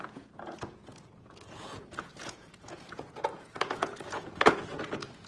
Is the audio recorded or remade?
remade